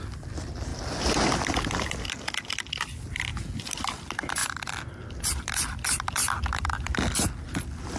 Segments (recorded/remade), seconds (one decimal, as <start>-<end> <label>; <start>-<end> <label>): 0.0-8.0 recorded